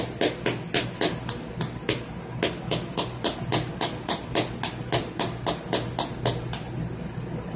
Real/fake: real